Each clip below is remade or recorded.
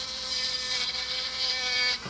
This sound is remade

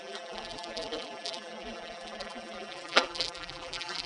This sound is remade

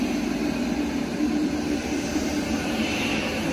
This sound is remade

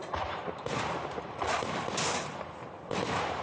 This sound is remade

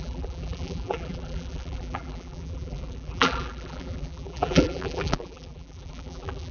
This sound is remade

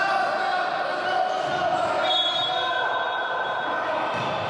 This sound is recorded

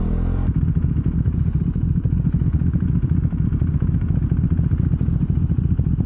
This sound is remade